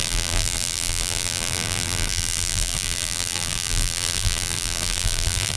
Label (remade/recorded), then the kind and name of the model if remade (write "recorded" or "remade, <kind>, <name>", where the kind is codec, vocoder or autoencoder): remade, vocoder, BigVGAN v2